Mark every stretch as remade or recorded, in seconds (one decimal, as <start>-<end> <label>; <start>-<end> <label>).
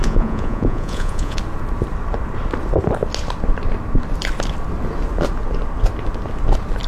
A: 0.0-1.4 remade; 1.4-6.9 recorded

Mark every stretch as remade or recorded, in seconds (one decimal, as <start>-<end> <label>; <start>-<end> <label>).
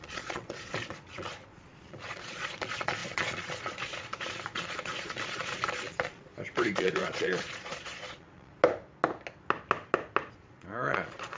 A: 0.0-6.3 remade; 6.3-6.8 recorded; 6.8-8.5 remade; 8.5-10.3 recorded; 10.3-11.4 remade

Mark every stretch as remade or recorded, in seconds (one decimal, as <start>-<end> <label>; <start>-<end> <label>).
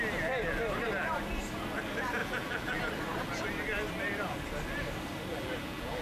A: 0.0-2.2 recorded; 2.2-2.8 remade; 2.8-5.3 recorded; 5.3-6.0 remade